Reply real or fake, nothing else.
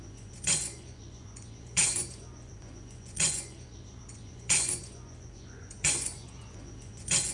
fake